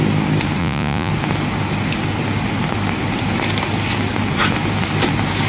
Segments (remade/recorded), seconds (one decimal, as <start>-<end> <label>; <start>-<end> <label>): 0.0-0.6 recorded; 0.6-1.1 remade; 1.1-5.5 recorded